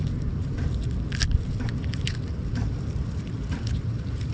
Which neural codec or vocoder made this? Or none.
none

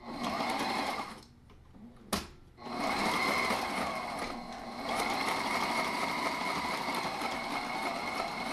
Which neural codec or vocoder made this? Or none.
none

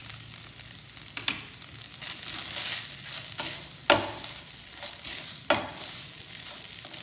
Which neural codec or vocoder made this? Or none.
none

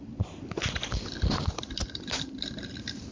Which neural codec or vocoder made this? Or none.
vocoder, BigVGAN v2